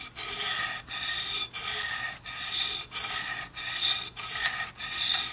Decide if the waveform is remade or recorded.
recorded